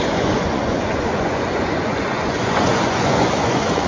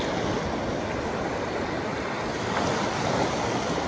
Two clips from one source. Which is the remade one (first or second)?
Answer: first